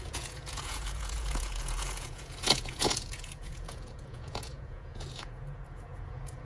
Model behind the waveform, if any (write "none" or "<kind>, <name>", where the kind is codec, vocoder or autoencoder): vocoder, Vocos